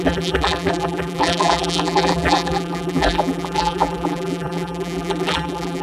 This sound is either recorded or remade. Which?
remade